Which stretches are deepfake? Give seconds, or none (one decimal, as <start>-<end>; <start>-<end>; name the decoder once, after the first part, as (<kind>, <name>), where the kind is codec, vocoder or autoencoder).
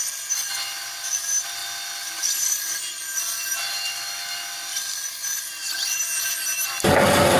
none